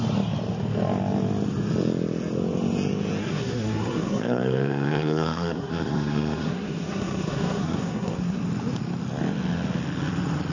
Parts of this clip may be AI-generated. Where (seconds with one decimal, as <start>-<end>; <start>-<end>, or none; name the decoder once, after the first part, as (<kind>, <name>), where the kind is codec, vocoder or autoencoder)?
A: 3.2-8.4 (codec, SNAC)